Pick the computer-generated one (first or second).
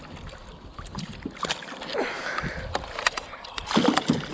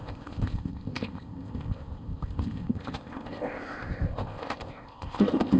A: second